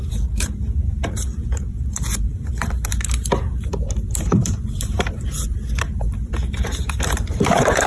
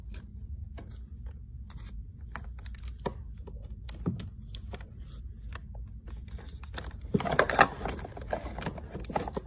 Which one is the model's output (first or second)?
first